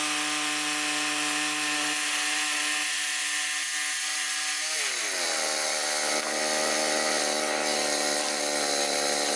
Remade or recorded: recorded